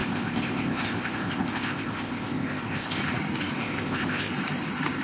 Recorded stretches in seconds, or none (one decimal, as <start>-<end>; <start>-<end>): 3.0-3.6; 4.3-5.0